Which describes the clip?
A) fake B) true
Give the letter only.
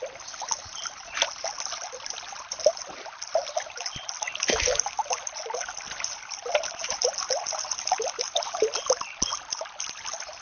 B